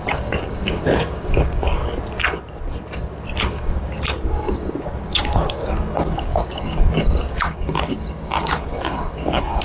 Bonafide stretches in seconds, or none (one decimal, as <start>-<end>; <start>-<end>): 1.8-3.5